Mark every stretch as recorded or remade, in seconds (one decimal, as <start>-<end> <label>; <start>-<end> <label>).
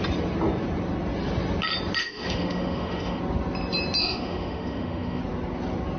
0.0-2.0 recorded; 2.0-3.2 remade; 3.2-4.0 recorded; 4.0-5.2 remade; 5.2-6.0 recorded